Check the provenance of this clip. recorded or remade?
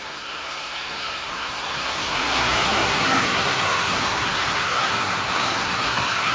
remade